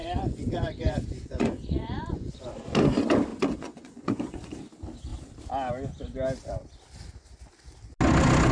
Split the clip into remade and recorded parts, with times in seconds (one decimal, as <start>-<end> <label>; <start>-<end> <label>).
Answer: 0.0-2.5 remade; 2.5-3.3 recorded; 3.3-4.6 remade; 4.6-8.5 recorded